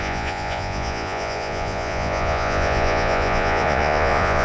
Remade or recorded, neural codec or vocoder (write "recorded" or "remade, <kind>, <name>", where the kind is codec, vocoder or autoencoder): remade, vocoder, Vocos